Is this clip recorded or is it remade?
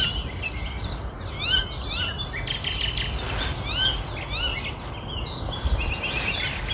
recorded